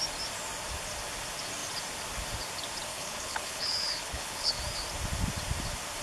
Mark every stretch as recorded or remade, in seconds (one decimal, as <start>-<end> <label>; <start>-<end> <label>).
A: 0.0-2.9 recorded; 2.9-4.6 remade; 4.6-6.0 recorded

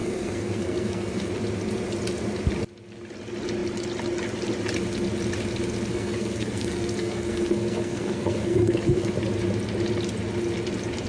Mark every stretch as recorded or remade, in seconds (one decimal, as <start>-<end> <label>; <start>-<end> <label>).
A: 0.0-1.3 remade; 1.3-5.9 recorded; 5.9-9.1 remade; 9.1-11.1 recorded

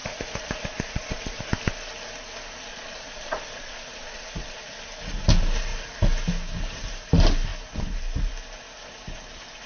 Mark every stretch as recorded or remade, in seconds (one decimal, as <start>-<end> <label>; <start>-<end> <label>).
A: 0.0-1.4 remade; 1.4-2.7 recorded; 2.7-4.7 remade; 4.7-9.7 recorded

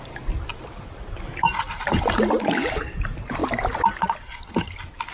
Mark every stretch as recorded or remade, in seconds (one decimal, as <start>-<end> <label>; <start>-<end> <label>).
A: 0.0-5.1 recorded

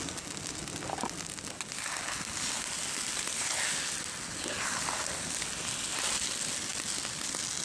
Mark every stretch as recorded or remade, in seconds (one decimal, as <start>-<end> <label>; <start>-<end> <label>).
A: 0.0-7.6 recorded